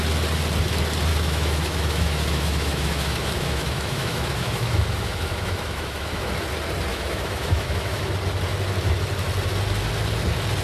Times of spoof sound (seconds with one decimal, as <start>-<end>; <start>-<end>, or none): 1.1-6.3; 6.9-8.1